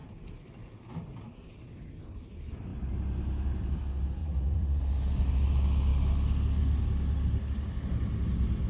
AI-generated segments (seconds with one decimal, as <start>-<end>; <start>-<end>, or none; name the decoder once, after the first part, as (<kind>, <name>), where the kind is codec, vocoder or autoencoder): 4.2-4.8 (vocoder, Vocos)